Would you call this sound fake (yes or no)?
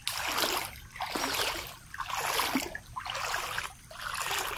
no